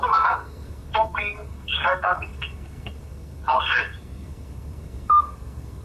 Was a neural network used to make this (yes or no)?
yes